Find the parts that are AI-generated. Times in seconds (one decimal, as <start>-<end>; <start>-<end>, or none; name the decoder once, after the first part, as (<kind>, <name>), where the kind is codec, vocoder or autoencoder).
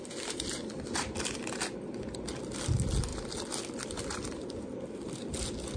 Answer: none